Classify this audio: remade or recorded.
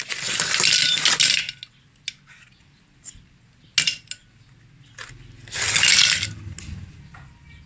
recorded